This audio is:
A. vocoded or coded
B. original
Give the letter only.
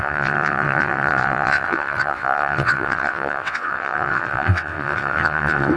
A